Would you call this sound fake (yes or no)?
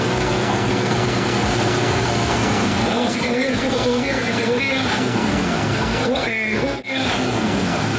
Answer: yes